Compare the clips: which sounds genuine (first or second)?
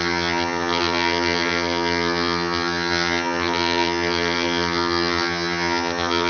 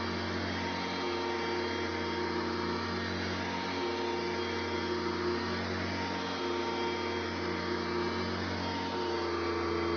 second